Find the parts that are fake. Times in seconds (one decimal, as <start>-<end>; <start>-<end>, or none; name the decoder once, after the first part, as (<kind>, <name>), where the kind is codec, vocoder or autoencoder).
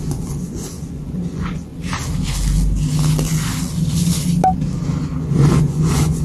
0.0-1.7 (vocoder, Vocos); 5.2-6.2